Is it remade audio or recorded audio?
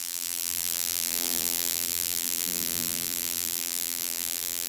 remade